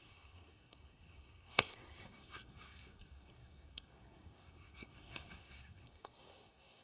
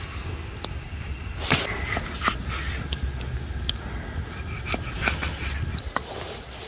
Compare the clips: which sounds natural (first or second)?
second